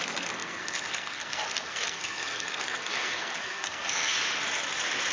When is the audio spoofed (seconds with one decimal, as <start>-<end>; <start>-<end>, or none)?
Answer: 0.0-4.1

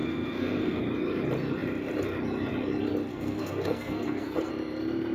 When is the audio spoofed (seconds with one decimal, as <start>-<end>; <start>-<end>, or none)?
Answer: 0.0-0.8; 3.1-4.5

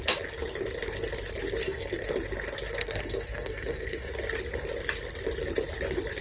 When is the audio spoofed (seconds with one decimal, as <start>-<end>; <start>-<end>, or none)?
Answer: 1.6-2.1; 2.8-4.1

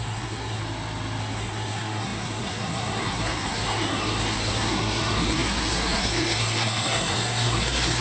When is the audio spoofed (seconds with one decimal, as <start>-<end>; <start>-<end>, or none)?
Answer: 0.0-0.6; 1.2-8.0

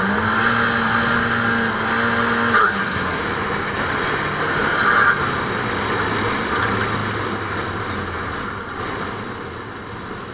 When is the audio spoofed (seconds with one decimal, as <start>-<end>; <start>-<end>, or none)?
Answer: 2.6-3.2

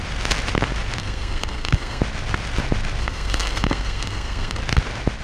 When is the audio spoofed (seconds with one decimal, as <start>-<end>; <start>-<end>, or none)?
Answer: 1.0-2.0; 3.0-4.6

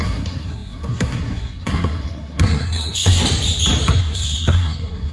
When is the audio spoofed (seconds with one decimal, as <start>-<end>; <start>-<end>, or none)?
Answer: 0.0-3.2; 4.0-5.1